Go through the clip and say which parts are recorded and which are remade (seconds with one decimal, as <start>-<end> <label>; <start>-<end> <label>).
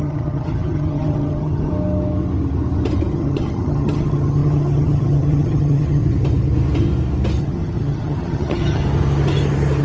0.0-1.7 remade; 1.7-3.1 recorded; 3.1-6.0 remade; 6.0-7.4 recorded; 7.4-8.8 remade; 8.8-9.8 recorded